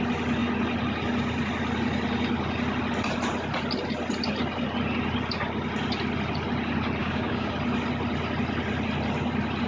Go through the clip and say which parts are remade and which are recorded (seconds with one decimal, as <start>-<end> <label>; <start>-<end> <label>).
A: 0.0-7.0 recorded; 7.0-7.5 remade; 7.5-9.7 recorded